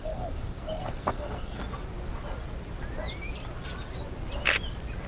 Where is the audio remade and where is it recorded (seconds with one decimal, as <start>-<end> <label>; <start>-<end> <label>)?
0.0-1.6 remade; 1.6-5.1 recorded